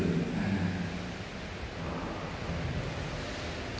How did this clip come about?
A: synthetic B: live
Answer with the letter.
B